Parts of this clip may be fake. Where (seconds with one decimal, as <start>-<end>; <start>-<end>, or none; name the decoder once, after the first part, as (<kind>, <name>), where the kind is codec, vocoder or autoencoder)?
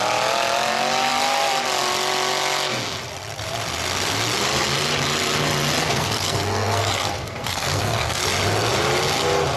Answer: 5.8-8.2 (codec, SNAC)